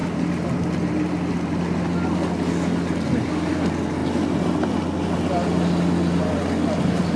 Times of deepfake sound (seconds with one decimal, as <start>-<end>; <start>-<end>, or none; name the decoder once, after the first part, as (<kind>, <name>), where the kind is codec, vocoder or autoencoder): none